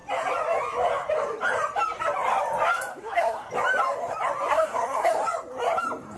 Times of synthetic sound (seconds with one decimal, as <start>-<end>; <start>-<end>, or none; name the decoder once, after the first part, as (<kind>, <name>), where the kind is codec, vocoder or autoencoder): 3.0-3.5 (codec, SNAC); 4.5-5.1